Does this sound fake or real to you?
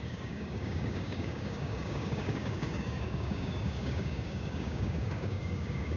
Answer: fake